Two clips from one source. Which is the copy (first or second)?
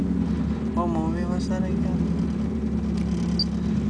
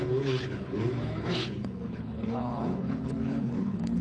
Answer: second